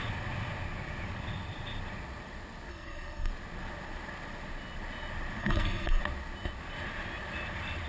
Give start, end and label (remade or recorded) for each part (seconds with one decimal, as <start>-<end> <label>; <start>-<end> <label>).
0.0-2.7 recorded; 2.7-3.3 remade; 3.3-5.4 recorded; 5.4-6.0 remade; 6.0-7.9 recorded